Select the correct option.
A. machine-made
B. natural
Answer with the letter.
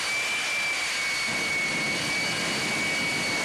B